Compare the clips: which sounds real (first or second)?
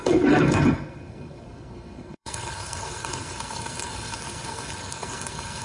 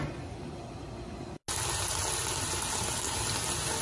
second